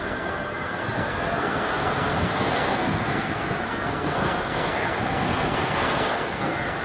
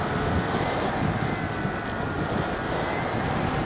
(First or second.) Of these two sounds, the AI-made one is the first